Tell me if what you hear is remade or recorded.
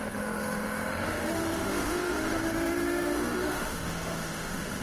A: remade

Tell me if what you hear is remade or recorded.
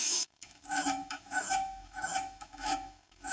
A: remade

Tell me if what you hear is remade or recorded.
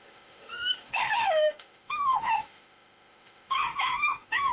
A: remade